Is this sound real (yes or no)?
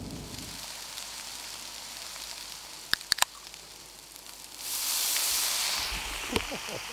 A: no